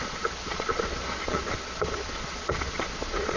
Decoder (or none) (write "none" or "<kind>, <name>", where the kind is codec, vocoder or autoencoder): vocoder, Vocos